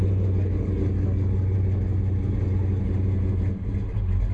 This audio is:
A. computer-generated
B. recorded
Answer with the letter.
B